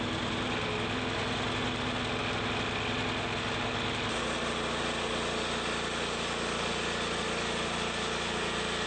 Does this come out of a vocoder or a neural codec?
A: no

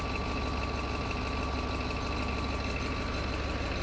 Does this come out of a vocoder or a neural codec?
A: no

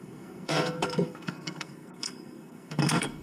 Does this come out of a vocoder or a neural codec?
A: yes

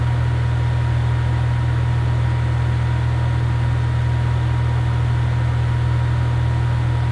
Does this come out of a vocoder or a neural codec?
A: no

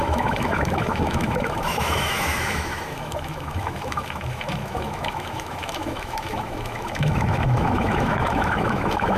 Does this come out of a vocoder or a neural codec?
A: yes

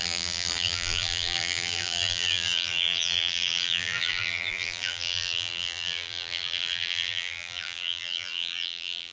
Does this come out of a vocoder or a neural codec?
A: yes